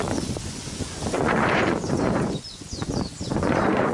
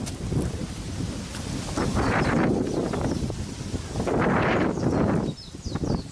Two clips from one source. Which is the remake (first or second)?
first